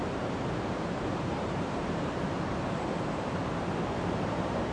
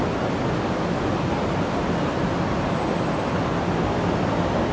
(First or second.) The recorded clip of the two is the second